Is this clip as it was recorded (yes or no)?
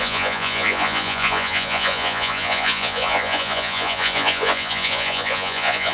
no